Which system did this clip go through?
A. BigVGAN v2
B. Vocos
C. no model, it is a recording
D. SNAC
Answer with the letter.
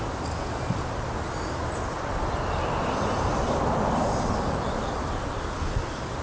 C